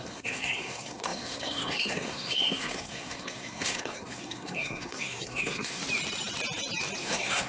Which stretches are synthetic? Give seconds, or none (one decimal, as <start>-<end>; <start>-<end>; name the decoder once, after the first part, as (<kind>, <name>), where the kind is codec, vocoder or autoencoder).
0.0-5.8 (codec, SNAC); 7.0-7.5